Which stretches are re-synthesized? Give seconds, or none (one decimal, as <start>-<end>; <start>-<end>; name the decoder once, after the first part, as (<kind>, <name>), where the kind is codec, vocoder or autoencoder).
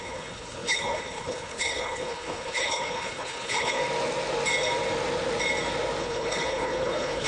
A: 0.0-3.8 (codec, HILCodec); 6.0-7.3